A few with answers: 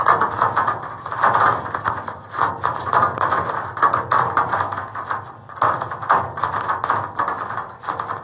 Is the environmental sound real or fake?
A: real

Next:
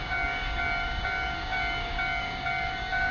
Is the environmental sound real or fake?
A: fake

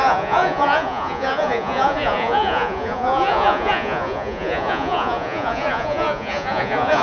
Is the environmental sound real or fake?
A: fake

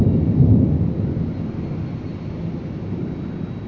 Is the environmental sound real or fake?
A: real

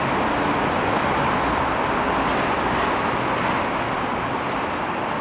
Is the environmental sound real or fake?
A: real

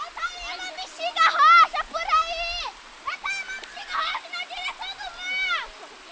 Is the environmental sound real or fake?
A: real